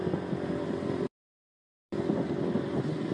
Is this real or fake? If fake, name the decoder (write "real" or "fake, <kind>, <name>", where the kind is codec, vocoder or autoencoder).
fake, vocoder, BigVGAN v2